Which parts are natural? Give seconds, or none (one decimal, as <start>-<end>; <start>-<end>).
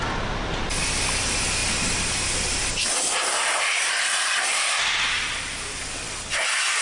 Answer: 0.0-6.8